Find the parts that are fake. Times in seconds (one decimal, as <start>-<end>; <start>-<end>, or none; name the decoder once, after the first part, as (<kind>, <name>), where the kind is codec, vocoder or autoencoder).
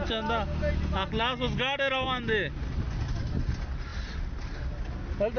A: none